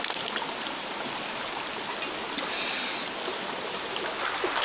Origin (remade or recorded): recorded